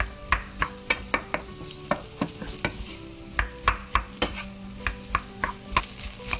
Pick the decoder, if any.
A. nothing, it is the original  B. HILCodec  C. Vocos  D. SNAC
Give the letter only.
A